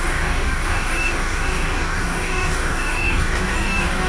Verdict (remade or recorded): remade